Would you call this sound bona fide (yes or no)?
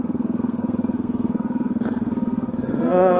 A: no